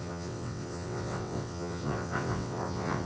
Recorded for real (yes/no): no